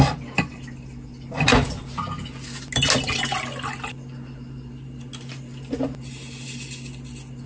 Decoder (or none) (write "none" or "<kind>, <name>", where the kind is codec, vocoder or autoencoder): none